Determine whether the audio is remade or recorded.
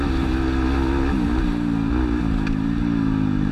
recorded